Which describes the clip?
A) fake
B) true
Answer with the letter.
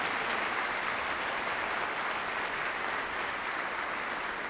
B